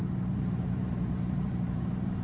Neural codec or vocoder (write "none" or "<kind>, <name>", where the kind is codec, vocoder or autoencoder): vocoder, BigVGAN v2